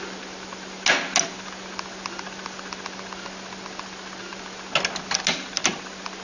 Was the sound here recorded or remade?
recorded